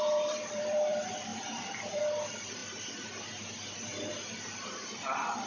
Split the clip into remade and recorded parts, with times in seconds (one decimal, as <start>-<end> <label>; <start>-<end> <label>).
0.0-2.6 remade; 2.6-5.5 recorded